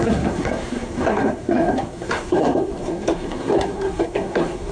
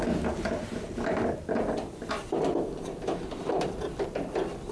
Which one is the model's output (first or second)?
first